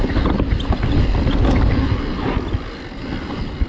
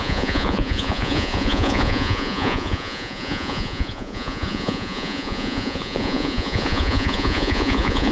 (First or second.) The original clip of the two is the first